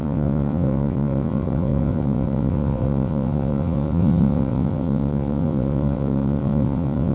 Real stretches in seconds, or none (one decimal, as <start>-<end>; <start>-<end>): none